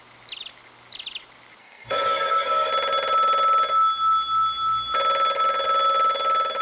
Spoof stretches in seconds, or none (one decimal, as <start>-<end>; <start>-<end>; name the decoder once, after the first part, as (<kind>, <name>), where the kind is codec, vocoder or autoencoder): 1.6-2.7 (codec, SNAC)